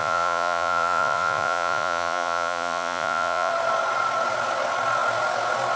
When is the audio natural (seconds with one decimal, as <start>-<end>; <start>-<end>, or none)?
3.5-5.8